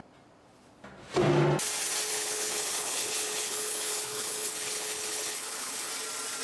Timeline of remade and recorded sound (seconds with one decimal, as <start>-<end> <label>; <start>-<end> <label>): 0.0-2.1 recorded; 2.1-5.9 remade; 5.9-6.4 recorded